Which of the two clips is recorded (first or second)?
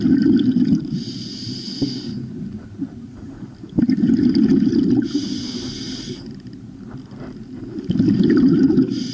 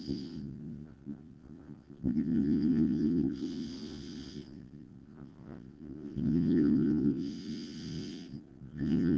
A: first